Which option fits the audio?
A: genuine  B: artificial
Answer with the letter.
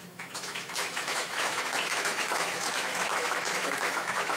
B